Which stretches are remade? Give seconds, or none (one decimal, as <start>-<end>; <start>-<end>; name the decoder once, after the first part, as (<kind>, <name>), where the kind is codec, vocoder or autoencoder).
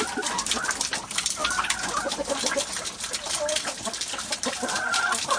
none